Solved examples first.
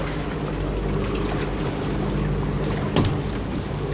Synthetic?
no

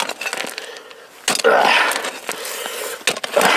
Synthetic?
no